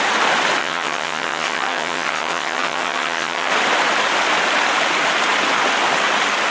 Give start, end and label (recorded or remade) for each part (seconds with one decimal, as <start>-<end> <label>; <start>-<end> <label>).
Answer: 0.0-0.6 recorded; 0.6-3.5 remade; 3.5-6.5 recorded